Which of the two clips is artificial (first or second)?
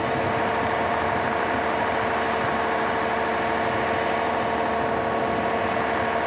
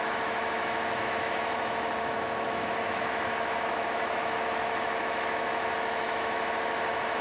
second